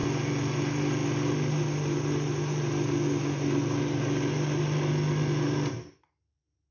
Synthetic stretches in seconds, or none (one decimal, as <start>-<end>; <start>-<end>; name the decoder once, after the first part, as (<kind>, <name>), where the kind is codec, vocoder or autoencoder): none